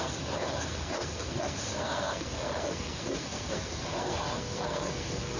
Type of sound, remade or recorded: remade